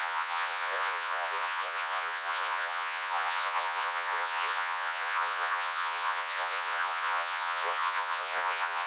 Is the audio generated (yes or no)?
yes